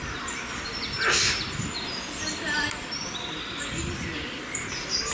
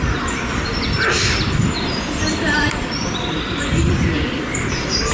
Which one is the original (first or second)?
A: first